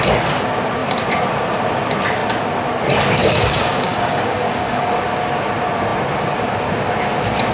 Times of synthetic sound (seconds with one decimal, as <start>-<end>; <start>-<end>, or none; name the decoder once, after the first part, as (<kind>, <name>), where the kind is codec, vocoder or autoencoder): 3.2-5.0 (codec, DAC)